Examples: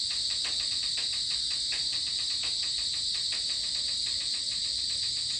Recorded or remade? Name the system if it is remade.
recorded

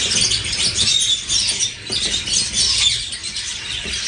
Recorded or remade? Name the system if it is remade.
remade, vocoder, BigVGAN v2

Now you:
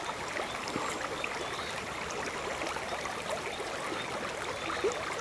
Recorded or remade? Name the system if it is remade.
recorded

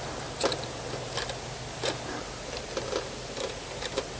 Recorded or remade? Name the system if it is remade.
recorded